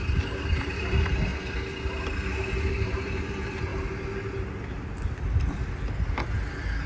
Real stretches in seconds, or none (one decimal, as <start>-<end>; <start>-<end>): 1.3-2.7; 3.7-6.9